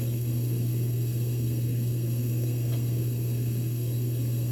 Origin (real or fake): fake